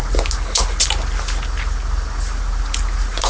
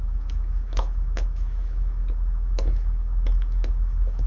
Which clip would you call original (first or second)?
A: first